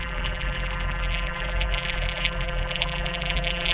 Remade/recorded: remade